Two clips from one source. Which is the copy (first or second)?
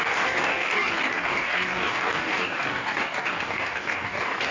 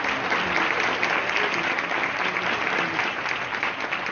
first